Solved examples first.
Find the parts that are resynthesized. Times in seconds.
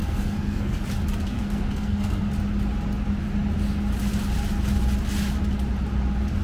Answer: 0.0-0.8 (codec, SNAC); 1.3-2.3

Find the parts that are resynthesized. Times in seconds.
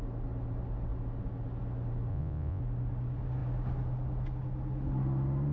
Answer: 2.1-2.6 (vocoder, Vocos)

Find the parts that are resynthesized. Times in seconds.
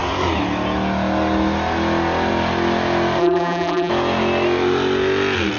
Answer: 3.2-3.9 (vocoder, BigVGAN v2)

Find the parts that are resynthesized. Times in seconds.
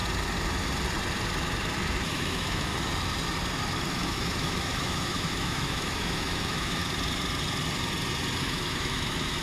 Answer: 2.1-2.7 (autoencoder, DAC-VAE); 3.9-6.8; 8.4-9.4